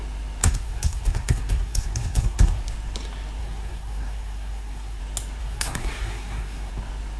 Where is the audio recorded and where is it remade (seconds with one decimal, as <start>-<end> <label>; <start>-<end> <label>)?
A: 0.0-0.4 recorded; 0.4-2.6 remade; 2.6-3.4 recorded; 3.4-5.0 remade; 5.0-5.4 recorded; 5.4-6.7 remade; 6.7-7.2 recorded

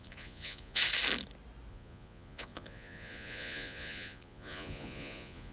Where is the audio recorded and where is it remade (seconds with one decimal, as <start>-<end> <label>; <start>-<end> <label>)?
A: 0.0-0.8 remade; 0.8-1.7 recorded; 1.7-5.5 remade